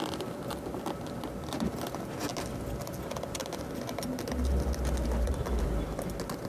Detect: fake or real real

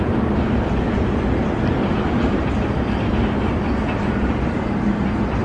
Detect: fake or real real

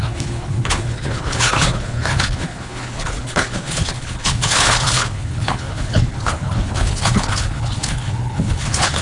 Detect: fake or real fake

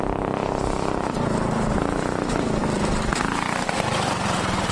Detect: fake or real fake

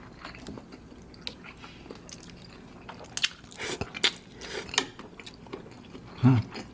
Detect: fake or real real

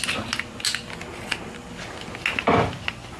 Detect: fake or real real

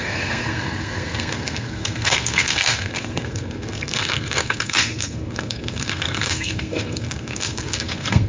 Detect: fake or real fake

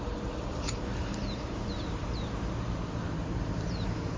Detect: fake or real fake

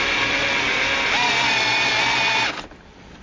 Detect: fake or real real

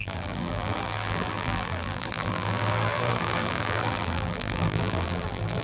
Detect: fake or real fake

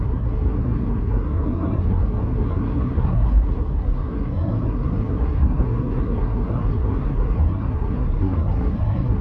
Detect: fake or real fake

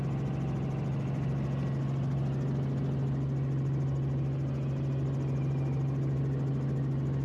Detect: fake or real real